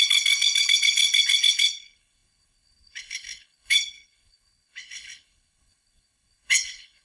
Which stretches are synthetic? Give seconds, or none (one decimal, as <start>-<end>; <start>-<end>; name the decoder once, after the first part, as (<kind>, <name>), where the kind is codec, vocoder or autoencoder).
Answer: 0.0-7.0 (codec, HILCodec)